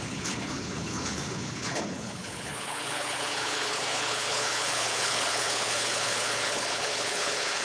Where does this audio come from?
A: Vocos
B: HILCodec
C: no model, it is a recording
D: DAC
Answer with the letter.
B